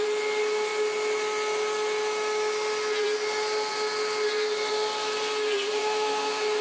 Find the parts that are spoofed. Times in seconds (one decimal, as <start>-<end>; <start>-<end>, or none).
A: 5.8-6.6